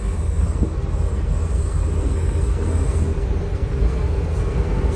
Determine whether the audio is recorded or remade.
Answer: remade